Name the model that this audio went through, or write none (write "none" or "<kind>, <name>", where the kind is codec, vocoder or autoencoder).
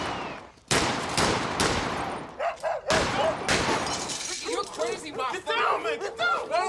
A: none